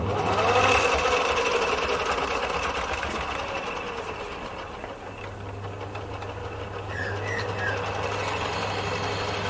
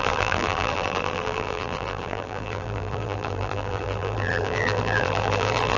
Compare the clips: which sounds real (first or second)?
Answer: first